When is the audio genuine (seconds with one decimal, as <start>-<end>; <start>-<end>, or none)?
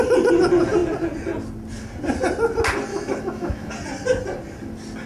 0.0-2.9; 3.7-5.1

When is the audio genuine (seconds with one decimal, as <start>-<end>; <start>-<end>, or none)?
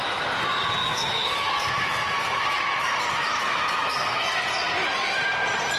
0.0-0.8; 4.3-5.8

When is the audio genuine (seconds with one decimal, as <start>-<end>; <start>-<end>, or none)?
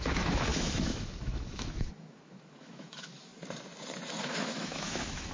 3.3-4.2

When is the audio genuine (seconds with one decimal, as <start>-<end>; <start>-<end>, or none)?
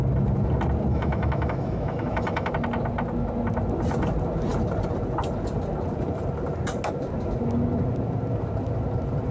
0.0-0.9; 2.5-9.3